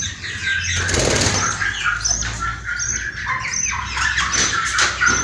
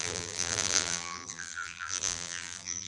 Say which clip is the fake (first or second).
second